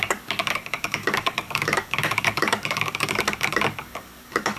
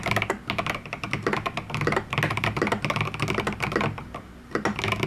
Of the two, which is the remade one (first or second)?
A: first